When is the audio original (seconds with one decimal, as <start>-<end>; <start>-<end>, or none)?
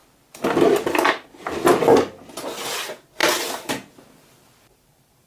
0.0-3.2